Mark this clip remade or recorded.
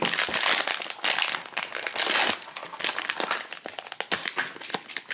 recorded